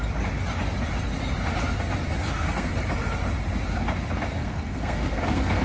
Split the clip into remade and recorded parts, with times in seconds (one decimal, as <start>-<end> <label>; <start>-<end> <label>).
0.0-2.2 recorded; 2.2-2.7 remade; 2.7-4.4 recorded; 4.4-5.6 remade